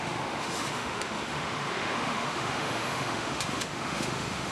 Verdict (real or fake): fake